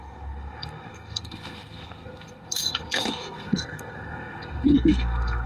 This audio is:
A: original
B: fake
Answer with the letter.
B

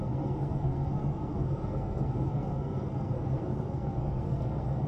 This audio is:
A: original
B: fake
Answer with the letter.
B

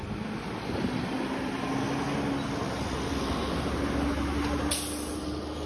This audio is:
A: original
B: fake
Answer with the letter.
A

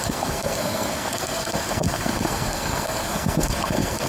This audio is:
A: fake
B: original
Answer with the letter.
A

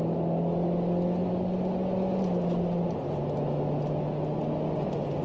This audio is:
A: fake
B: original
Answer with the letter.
B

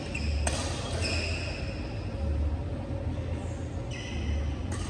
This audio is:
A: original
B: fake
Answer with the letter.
A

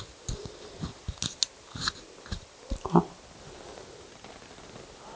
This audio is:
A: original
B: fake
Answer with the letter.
A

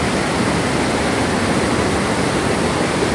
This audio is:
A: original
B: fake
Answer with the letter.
A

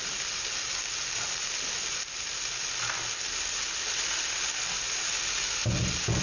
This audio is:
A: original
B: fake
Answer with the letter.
A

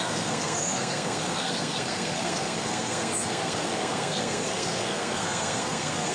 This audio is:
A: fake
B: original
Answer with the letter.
A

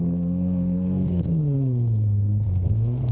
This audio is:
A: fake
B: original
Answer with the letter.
A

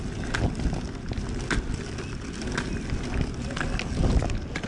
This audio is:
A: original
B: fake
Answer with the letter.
A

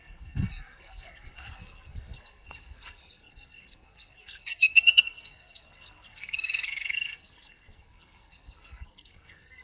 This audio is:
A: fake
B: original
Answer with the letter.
A